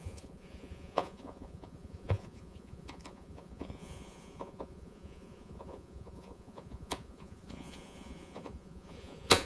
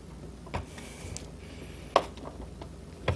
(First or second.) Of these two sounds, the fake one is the first